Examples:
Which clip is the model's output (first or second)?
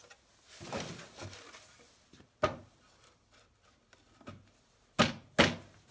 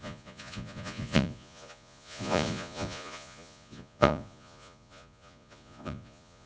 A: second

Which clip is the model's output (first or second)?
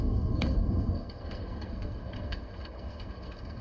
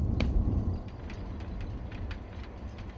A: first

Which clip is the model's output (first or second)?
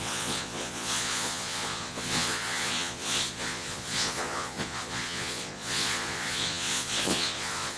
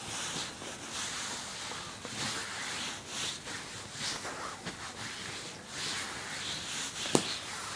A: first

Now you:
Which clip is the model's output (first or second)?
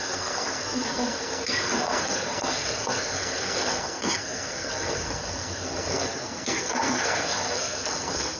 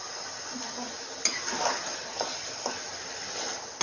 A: first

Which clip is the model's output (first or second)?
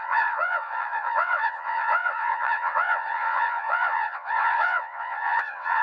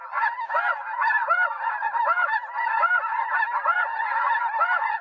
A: first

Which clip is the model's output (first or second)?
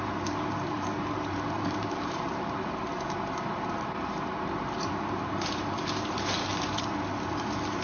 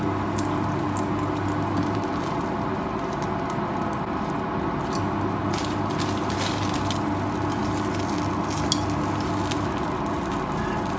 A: first